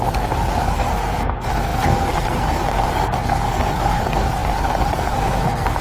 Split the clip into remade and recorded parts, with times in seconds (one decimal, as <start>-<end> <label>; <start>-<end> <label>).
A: 0.0-5.8 remade